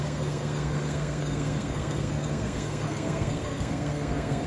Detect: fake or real fake